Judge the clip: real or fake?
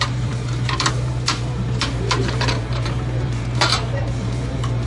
fake